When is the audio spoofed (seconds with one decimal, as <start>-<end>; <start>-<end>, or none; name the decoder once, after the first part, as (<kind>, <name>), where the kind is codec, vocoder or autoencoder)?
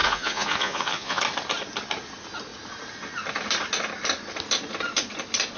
0.0-1.2 (vocoder, Vocos)